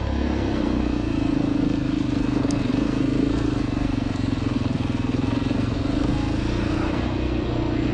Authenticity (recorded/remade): remade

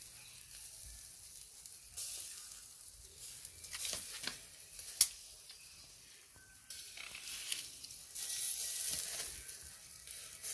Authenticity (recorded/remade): recorded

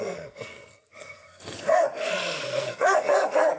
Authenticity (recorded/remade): remade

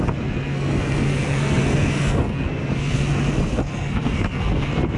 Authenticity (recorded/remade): remade